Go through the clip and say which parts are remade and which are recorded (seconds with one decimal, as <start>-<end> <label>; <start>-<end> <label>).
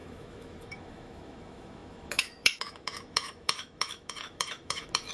0.0-5.1 remade